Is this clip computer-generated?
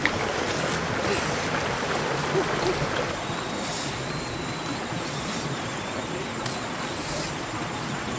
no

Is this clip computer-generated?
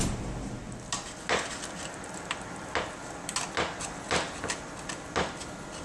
no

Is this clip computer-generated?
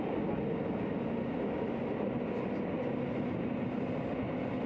no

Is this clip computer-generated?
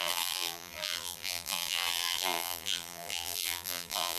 yes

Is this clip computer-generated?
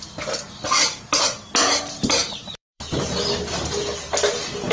yes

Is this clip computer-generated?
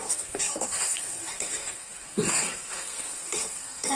yes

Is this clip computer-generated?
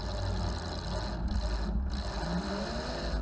no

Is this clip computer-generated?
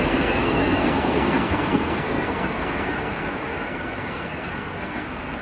yes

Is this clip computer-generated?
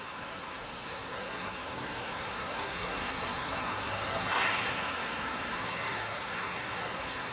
yes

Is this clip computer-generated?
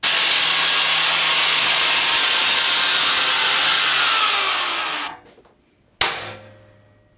no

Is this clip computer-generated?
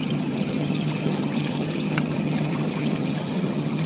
yes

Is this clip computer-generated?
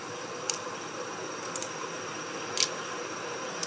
no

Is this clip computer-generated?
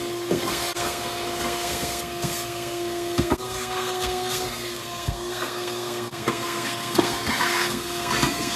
yes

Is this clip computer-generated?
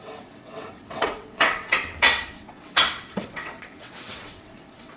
yes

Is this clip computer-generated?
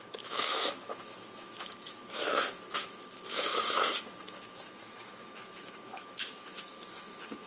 yes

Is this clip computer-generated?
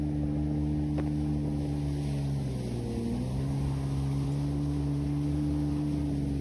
no